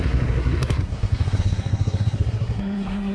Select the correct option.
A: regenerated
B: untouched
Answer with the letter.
A